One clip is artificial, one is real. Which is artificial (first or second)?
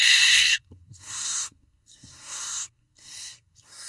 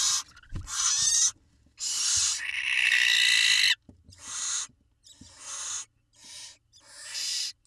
first